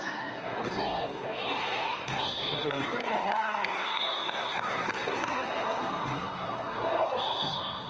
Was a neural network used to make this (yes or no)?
yes